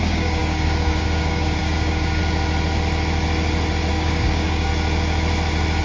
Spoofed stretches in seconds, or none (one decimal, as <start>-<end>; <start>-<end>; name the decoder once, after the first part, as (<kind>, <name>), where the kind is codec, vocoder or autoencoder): 0.0-2.2 (codec, DAC); 3.9-4.7